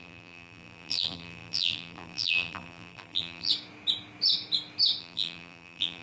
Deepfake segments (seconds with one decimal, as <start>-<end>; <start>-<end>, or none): 0.0-3.5; 5.0-6.0